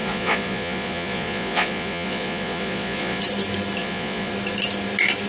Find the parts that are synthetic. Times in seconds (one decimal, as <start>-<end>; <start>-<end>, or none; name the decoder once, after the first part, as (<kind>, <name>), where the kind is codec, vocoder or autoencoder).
0.0-3.2 (vocoder, Vocos); 3.8-4.3